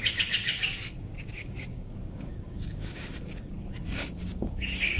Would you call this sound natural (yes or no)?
no